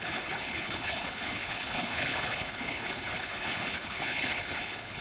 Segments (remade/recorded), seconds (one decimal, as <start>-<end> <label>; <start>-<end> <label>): 0.0-5.0 remade